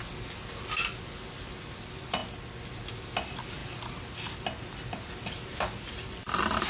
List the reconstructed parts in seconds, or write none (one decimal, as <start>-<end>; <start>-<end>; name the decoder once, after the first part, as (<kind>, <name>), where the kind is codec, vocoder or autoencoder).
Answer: none